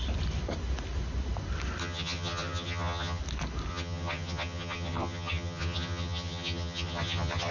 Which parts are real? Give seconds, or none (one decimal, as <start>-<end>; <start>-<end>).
0.0-1.8; 3.2-3.7